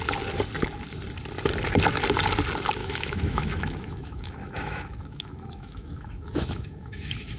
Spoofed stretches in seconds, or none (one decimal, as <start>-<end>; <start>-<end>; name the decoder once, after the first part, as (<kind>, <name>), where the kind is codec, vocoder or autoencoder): 2.8-7.4 (autoencoder, DAC-VAE)